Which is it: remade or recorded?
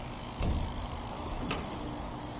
recorded